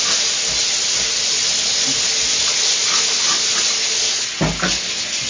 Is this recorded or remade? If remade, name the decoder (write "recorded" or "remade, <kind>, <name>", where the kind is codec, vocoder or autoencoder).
recorded